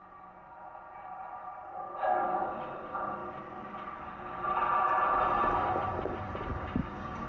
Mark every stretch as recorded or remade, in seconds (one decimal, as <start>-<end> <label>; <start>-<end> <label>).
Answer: 0.0-1.7 recorded; 1.7-2.5 remade; 2.5-6.5 recorded; 6.5-7.3 remade